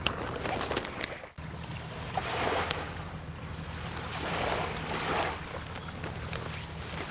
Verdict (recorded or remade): recorded